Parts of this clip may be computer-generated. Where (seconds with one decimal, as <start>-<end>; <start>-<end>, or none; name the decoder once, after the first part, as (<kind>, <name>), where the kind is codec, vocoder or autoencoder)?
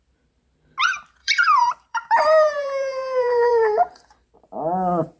1.2-4.3 (vocoder, BigVGAN v2)